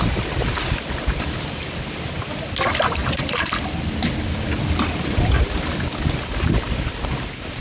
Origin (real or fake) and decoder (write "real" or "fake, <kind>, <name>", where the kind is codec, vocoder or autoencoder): real